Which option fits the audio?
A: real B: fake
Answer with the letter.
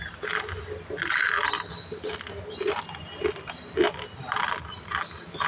A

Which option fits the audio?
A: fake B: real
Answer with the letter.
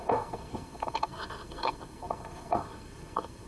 A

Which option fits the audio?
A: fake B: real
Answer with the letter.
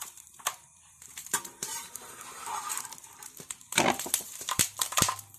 A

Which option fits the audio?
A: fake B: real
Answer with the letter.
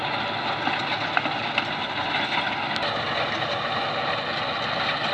B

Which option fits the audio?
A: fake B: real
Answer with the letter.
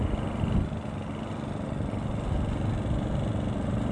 B